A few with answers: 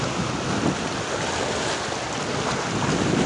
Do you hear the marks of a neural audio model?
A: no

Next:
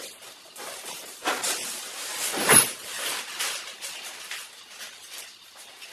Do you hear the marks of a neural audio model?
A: no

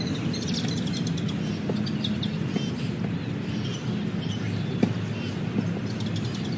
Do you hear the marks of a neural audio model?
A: no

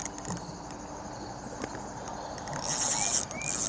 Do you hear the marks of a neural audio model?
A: yes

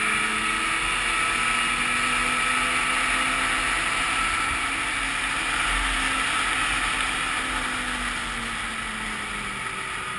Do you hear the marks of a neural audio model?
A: no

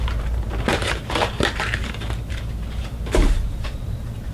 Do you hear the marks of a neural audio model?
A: yes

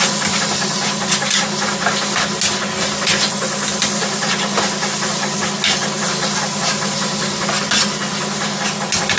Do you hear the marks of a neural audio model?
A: no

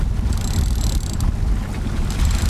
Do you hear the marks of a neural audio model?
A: no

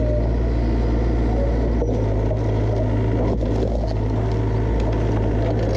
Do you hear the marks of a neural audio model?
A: no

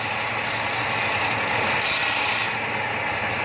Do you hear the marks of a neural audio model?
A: no